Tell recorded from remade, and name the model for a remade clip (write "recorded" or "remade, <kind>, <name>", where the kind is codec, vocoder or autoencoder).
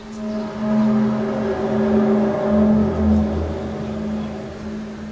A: recorded